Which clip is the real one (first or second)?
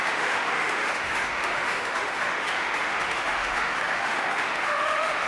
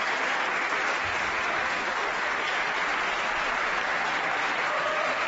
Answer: second